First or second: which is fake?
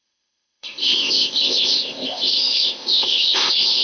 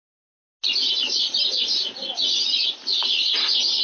first